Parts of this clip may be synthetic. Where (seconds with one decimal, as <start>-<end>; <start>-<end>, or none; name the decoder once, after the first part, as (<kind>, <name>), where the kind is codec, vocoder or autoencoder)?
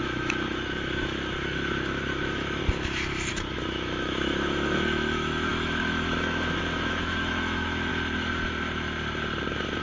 0.0-2.6 (autoencoder, DAC-VAE); 3.3-7.9